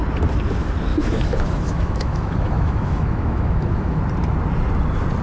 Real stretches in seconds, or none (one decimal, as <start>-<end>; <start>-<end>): 0.0-0.9; 4.0-5.2